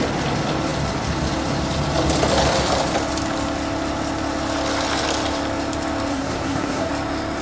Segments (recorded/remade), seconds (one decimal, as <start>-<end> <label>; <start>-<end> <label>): 0.0-6.1 recorded; 6.1-6.9 remade; 6.9-7.4 recorded